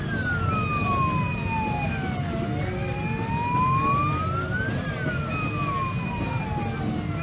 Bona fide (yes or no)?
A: yes